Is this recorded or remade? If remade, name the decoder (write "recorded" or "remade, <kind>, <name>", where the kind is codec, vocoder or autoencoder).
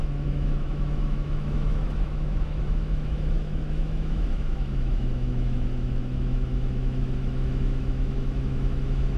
remade, autoencoder, DAC-VAE